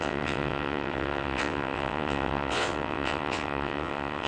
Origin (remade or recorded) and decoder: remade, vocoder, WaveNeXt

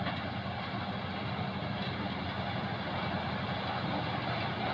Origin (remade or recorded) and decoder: recorded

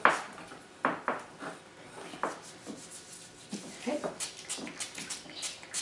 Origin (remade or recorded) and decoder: recorded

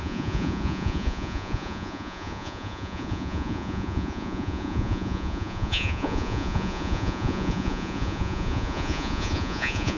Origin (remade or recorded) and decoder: remade, vocoder, Vocos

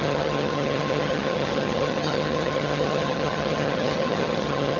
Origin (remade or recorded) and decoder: remade, vocoder, HiFi-GAN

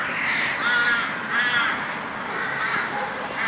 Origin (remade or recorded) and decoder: recorded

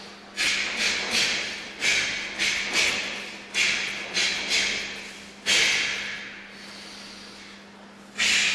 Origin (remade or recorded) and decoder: recorded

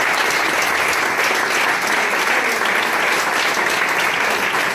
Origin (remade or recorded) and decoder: recorded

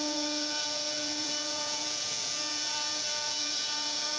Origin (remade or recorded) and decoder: remade, vocoder, Vocos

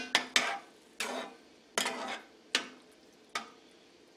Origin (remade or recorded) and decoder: recorded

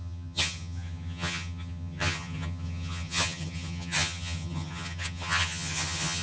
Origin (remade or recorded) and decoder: remade, vocoder, HiFi-GAN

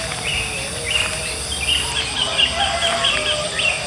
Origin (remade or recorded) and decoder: recorded